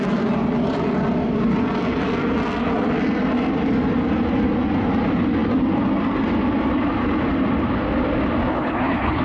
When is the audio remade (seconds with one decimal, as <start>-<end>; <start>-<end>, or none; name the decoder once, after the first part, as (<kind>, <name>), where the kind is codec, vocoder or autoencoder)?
8.5-9.2 (codec, HILCodec)